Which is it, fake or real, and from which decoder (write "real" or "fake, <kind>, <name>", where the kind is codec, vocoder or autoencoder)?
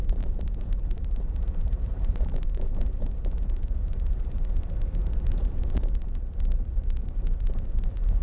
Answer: fake, vocoder, BigVGAN v2